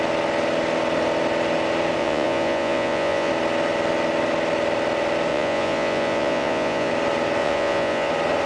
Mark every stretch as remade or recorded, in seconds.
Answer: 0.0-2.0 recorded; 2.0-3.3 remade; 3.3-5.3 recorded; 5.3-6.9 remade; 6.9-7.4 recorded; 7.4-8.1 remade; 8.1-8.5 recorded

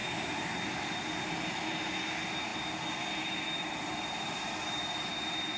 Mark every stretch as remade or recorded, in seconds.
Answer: 0.0-5.6 recorded

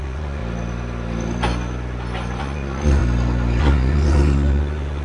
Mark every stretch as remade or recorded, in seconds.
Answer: 0.0-0.4 remade; 0.4-2.4 recorded; 2.4-3.0 remade; 3.0-3.6 recorded; 3.6-5.0 remade

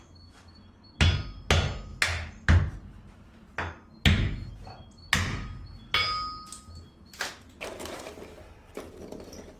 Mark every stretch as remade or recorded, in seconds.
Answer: 0.0-9.6 recorded

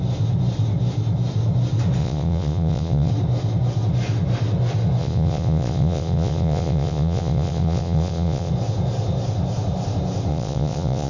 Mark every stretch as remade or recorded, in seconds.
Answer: 0.0-2.0 recorded; 2.0-3.1 remade; 3.1-5.0 recorded; 5.0-8.5 remade; 8.5-10.3 recorded; 10.3-11.1 remade

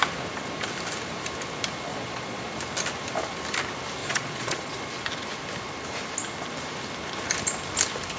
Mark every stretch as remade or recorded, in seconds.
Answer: 0.0-1.9 recorded; 1.9-2.5 remade; 2.5-4.0 recorded; 4.0-4.8 remade; 4.8-8.2 recorded